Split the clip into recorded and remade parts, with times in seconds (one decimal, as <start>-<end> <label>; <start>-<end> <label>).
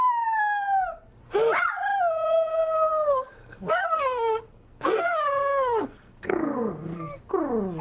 0.0-2.5 recorded; 2.5-7.2 remade; 7.2-7.8 recorded